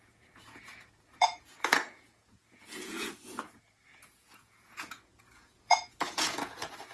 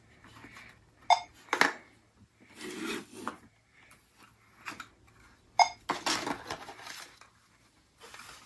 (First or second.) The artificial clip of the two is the first